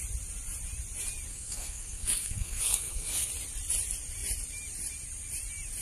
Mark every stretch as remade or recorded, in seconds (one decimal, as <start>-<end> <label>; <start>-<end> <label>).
0.0-1.3 recorded; 1.3-3.3 remade; 3.3-5.8 recorded